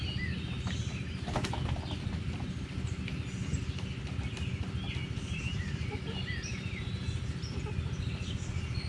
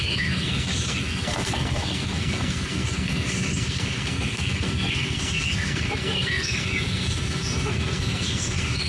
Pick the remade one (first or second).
second